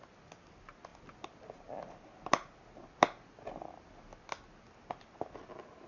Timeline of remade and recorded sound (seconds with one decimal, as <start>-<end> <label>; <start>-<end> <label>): 0.0-5.9 recorded